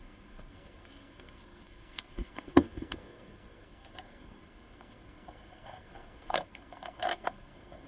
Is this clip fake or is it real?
fake